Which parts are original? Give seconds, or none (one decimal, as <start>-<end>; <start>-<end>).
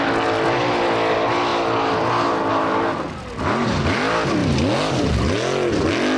0.0-6.2